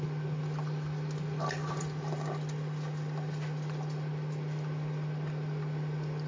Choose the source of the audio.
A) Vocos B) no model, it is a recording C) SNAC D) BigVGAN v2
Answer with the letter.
B